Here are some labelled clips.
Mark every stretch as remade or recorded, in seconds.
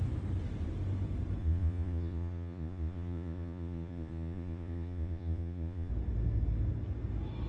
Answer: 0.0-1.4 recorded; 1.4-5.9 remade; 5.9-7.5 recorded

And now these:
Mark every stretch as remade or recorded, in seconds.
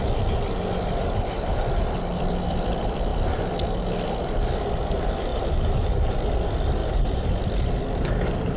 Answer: 0.0-5.3 recorded; 5.3-6.1 remade; 6.1-6.8 recorded; 6.8-7.3 remade; 7.3-8.6 recorded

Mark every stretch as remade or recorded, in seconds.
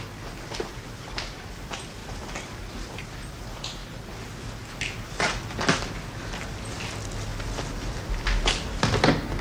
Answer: 0.0-9.4 recorded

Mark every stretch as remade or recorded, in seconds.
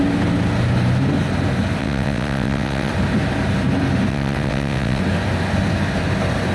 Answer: 0.0-1.8 recorded; 1.8-2.9 remade; 2.9-4.1 recorded; 4.1-5.0 remade; 5.0-6.5 recorded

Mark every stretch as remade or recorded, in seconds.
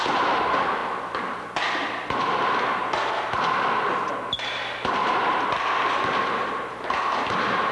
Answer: 0.0-7.7 recorded